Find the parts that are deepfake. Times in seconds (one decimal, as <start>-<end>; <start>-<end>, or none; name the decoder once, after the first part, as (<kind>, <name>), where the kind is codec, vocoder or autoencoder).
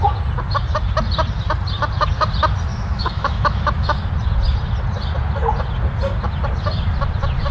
2.7-4.1 (autoencoder, DAC-VAE)